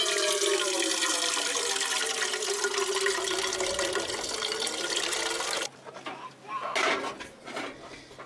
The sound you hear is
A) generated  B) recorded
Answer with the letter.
B